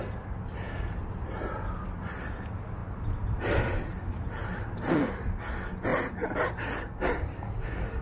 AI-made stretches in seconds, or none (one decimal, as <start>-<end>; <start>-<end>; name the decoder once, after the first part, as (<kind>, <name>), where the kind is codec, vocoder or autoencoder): 4.4-5.1 (vocoder, BigVGAN v2)